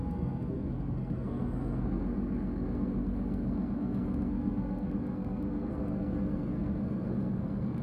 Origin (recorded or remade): remade